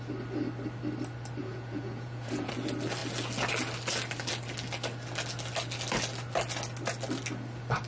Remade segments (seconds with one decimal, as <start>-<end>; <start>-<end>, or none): 1.4-2.5